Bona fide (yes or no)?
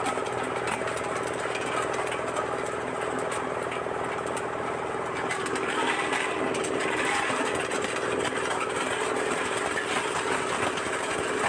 yes